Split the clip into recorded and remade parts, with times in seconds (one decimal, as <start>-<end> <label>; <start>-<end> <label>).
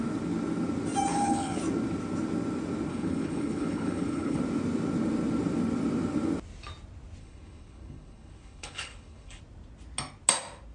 0.0-1.1 recorded; 1.1-1.6 remade; 1.6-2.9 recorded; 2.9-4.4 remade; 4.4-7.2 recorded; 7.2-9.4 remade; 9.4-10.7 recorded